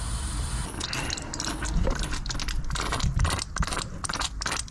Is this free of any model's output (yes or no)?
yes